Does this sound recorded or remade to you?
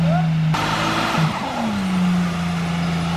recorded